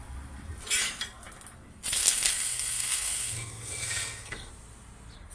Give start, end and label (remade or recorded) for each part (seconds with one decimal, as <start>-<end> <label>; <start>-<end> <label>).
0.0-2.0 recorded; 2.0-4.5 remade; 4.5-5.3 recorded